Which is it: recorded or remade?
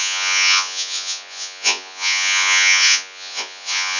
remade